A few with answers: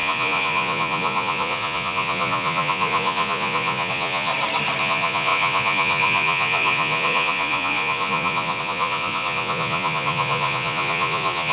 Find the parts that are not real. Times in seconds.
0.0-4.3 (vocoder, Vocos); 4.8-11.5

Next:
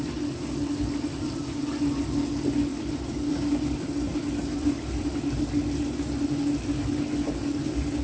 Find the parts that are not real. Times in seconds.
2.7-5.4 (vocoder, BigVGAN v2)

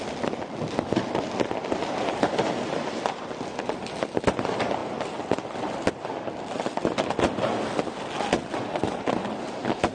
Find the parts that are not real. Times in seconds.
none

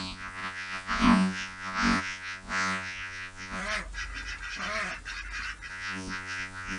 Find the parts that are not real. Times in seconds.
0.0-3.6 (vocoder, Vocos); 5.7-6.8

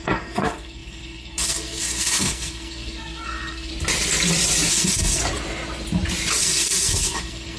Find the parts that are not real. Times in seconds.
0.0-3.7 (codec, SNAC); 4.7-5.2; 6.4-7.6

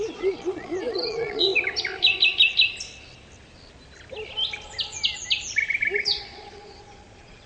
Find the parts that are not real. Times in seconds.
0.0-1.5 (vocoder, Vocos); 6.0-7.5

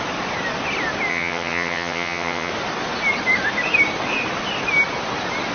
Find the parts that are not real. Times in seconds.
1.1-2.5 (vocoder, HiFi-GAN)